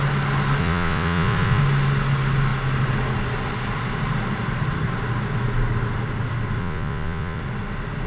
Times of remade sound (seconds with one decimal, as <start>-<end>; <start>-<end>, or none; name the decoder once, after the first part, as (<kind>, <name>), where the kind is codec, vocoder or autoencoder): 0.6-1.6 (vocoder, Vocos); 6.6-7.4